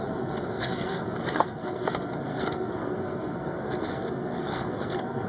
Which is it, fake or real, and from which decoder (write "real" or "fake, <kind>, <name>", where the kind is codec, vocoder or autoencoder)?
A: fake, codec, SNAC